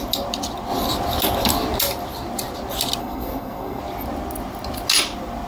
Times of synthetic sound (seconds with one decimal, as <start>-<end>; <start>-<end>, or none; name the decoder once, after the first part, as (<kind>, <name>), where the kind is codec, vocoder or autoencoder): 3.0-3.8 (codec, SNAC)